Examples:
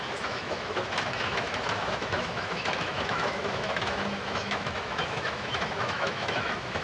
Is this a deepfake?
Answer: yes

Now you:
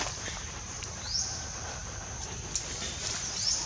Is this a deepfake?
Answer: yes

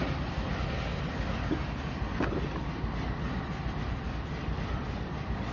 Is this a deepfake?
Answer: no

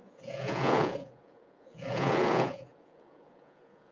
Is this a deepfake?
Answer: yes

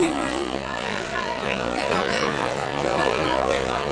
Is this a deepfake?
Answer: yes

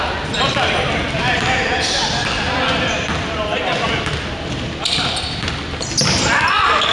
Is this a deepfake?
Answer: no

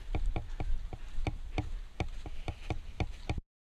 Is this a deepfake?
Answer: no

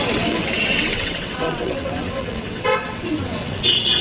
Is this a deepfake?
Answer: yes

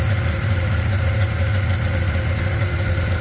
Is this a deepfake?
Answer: yes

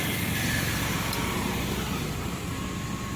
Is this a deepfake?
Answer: no